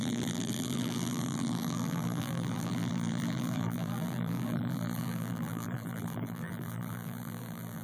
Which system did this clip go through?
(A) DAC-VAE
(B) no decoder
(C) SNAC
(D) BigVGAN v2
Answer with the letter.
D